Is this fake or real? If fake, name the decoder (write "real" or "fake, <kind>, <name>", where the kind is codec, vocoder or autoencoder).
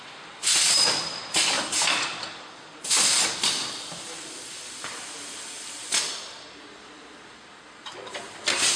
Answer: real